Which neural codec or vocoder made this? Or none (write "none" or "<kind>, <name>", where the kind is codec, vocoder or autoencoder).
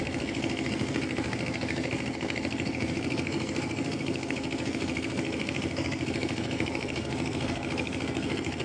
codec, SNAC